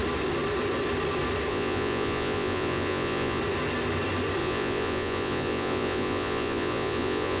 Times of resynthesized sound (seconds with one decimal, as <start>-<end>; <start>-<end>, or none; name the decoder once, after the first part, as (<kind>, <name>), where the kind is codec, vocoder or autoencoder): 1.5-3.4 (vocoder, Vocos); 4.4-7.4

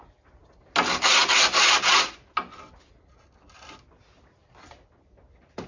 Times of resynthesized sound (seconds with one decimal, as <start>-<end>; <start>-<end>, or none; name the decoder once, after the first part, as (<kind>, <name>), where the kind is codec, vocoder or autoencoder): none

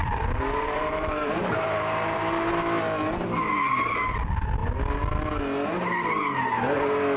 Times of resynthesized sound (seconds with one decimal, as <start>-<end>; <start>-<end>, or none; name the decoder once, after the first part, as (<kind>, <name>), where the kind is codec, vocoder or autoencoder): 0.0-2.5 (vocoder, BigVGAN v2)

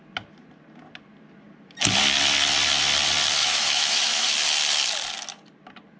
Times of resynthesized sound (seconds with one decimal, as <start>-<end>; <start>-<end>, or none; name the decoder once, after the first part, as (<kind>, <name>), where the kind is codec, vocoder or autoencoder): 3.4-4.3 (autoencoder, DAC-VAE)

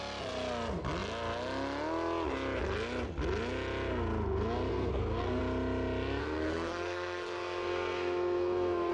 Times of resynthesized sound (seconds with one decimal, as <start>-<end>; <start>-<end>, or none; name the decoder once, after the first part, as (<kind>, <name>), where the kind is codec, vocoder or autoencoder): 4.7-5.4 (codec, SNAC); 6.2-8.9

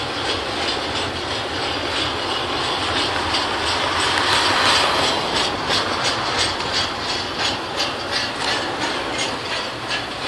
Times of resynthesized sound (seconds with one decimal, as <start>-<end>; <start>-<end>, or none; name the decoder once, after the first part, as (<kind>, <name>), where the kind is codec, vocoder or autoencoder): none